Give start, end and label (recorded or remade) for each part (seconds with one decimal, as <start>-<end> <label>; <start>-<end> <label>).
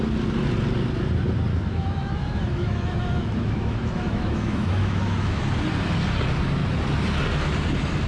0.0-1.5 recorded; 1.5-5.4 remade; 5.4-8.1 recorded